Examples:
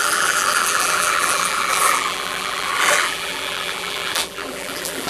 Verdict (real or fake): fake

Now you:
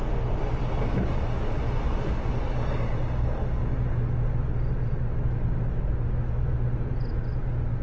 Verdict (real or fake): real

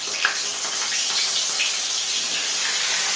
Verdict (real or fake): real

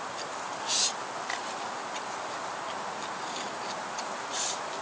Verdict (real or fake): real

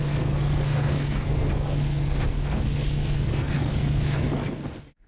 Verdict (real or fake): fake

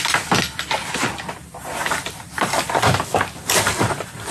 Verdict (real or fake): real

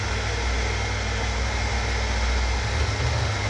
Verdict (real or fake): real